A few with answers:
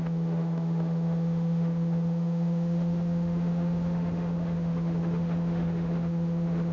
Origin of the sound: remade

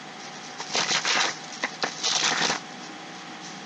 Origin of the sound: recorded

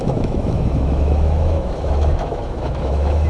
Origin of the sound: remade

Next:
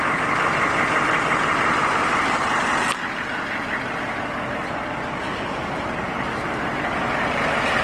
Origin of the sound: recorded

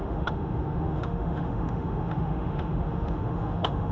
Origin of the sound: remade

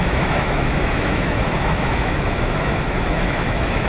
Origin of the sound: remade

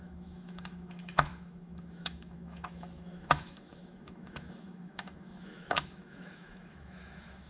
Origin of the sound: remade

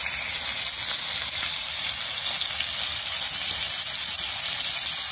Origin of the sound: recorded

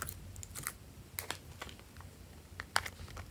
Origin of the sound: recorded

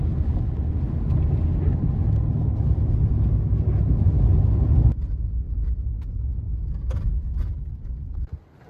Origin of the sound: recorded